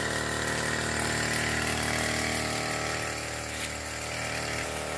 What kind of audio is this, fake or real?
real